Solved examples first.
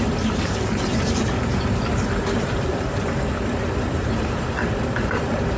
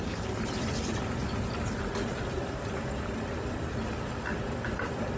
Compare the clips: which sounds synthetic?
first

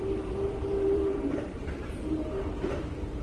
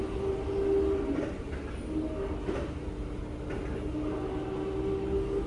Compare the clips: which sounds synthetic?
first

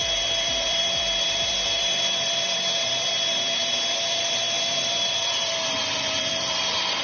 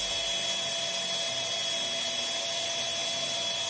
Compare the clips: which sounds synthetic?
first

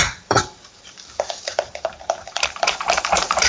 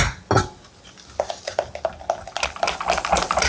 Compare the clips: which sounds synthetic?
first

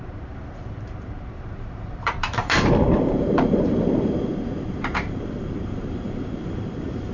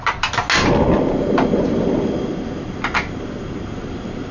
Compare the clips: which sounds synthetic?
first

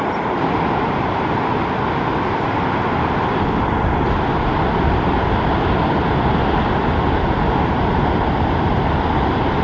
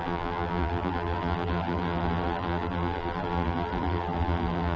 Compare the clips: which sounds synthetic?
second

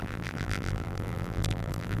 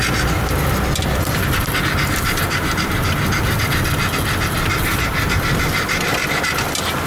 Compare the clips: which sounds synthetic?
first